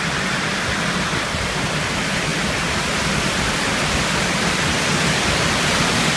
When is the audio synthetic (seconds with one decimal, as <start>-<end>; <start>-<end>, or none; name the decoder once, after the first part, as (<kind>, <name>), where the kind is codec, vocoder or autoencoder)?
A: none